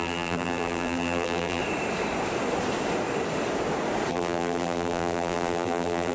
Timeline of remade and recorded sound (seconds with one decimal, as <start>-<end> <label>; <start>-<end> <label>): 0.0-1.6 remade; 1.6-4.1 recorded; 4.1-6.1 remade